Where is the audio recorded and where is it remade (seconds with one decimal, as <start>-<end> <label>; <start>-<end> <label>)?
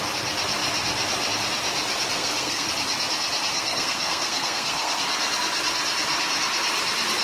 0.0-2.2 recorded; 2.2-2.7 remade; 2.7-3.5 recorded; 3.5-5.0 remade; 5.0-7.2 recorded